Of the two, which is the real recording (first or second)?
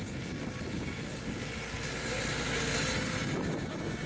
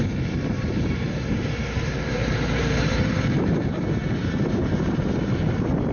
first